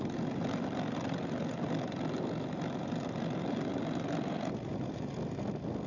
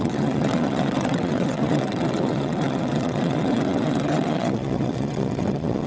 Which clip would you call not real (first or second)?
second